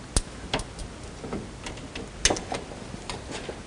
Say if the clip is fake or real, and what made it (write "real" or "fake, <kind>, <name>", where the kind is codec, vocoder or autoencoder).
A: real